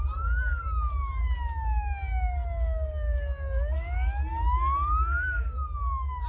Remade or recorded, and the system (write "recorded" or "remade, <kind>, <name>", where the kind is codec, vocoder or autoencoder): recorded